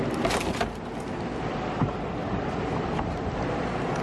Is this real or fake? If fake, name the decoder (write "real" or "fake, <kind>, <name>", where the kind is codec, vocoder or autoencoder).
real